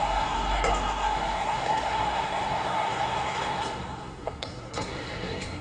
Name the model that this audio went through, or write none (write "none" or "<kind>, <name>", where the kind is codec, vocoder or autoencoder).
codec, SNAC